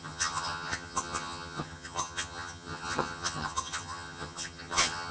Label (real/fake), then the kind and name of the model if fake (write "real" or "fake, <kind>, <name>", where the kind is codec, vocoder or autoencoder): fake, vocoder, HiFi-GAN